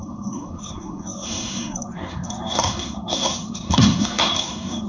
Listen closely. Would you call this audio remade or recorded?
remade